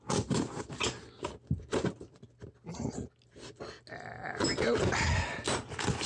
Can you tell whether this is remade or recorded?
recorded